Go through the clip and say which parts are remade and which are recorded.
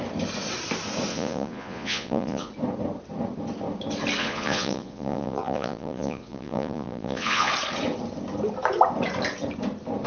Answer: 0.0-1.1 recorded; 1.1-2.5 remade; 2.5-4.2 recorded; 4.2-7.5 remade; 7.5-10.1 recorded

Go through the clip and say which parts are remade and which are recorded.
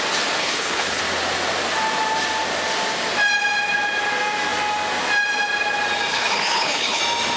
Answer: 0.0-0.4 recorded; 0.4-1.0 remade; 1.0-6.1 recorded; 6.1-7.0 remade; 7.0-7.4 recorded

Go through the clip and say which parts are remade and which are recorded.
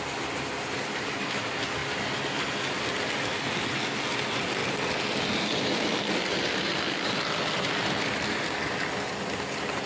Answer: 0.0-9.9 recorded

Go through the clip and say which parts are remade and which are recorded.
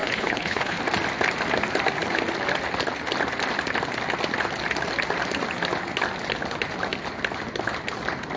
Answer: 0.0-0.8 remade; 0.8-8.4 recorded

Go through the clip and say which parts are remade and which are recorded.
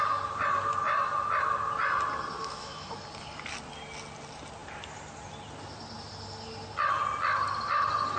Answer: 0.0-2.4 recorded; 2.4-2.9 remade; 2.9-8.2 recorded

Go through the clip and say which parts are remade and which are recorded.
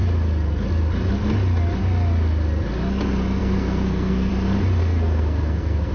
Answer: 0.0-3.4 recorded; 3.4-4.3 remade; 4.3-4.8 recorded; 4.8-5.9 remade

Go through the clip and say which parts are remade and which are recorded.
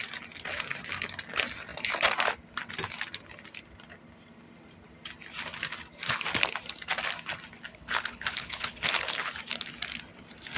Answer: 0.0-7.7 recorded; 7.7-9.3 remade; 9.3-10.6 recorded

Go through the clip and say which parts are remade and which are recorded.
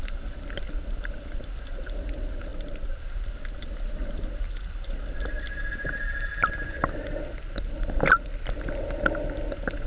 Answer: 0.0-2.5 recorded; 2.5-3.0 remade; 3.0-9.9 recorded